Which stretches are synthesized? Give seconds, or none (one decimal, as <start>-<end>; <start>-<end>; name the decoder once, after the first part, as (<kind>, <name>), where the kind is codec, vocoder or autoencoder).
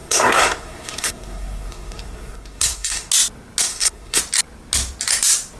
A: 0.0-3.1 (codec, SNAC); 3.7-4.2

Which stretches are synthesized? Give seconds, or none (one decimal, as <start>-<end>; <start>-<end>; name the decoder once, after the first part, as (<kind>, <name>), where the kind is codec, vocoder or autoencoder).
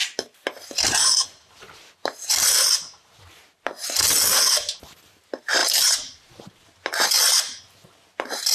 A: none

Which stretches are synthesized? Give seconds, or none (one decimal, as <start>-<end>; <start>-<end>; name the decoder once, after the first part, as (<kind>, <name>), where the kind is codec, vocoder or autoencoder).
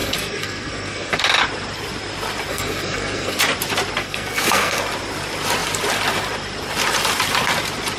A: 0.0-1.2 (codec, SNAC); 2.5-3.4; 4.0-4.8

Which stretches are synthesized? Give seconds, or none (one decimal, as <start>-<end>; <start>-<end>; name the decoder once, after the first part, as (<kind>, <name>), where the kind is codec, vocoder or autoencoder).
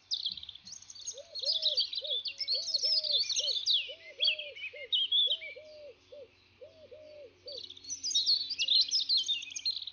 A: none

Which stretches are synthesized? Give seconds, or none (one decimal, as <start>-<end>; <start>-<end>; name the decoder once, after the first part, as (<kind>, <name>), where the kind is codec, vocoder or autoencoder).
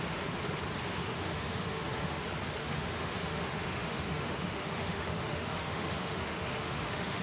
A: 0.9-2.2 (autoencoder, DAC-VAE); 2.6-7.2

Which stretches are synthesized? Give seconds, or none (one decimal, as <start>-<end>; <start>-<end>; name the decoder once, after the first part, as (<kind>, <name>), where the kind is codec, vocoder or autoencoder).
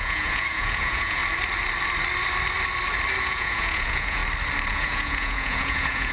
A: 0.0-1.2 (vocoder, Vocos); 3.2-4.2; 4.7-6.1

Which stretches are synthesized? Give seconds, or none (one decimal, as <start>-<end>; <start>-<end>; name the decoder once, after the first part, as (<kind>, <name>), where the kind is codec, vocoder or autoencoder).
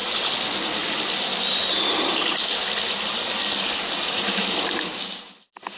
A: none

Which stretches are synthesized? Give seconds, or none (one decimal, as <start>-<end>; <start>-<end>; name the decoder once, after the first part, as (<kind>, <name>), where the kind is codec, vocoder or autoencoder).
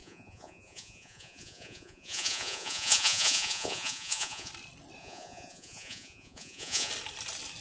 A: 0.0-4.5 (vocoder, Vocos); 5.0-6.9